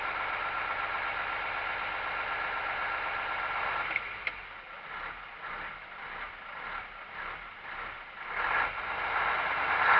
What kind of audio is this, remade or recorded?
recorded